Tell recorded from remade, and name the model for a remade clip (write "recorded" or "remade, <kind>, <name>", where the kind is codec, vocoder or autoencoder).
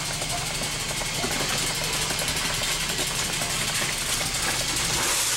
recorded